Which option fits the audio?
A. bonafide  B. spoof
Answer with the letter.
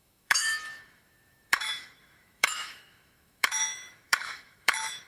B